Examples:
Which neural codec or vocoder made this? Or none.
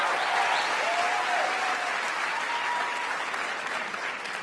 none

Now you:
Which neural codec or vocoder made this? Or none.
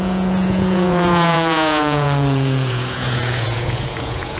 vocoder, Vocos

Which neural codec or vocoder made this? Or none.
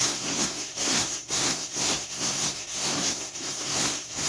codec, SNAC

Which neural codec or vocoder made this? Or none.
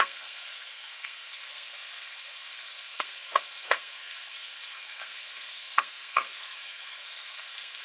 codec, SNAC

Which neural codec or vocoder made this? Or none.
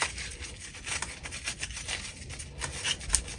none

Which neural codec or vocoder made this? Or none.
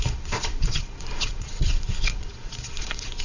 vocoder, Vocos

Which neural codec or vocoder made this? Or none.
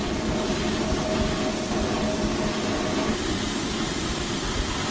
none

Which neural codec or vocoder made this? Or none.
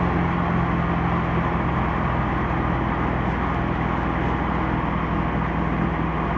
none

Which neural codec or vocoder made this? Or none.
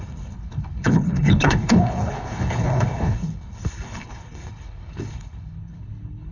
codec, HILCodec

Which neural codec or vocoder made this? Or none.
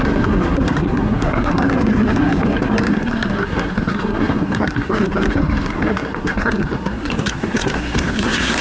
codec, SNAC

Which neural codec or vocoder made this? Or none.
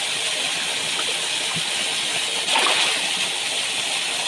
none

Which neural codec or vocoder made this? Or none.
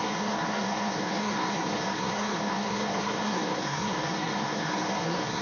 codec, SNAC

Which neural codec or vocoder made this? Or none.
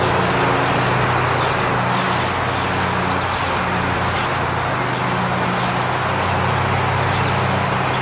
none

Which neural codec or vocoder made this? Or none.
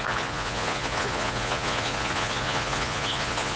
vocoder, Vocos